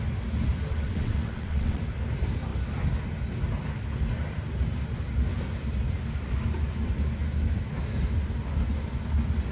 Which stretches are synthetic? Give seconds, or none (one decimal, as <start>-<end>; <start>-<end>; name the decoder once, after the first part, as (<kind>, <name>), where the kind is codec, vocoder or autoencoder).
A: 0.7-1.8 (vocoder, WaveNeXt)